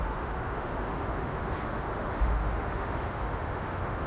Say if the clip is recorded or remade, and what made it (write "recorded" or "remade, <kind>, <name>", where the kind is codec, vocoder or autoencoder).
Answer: remade, autoencoder, DAC-VAE